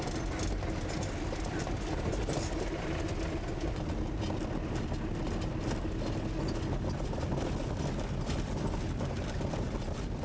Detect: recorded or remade recorded